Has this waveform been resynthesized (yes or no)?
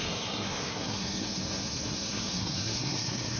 yes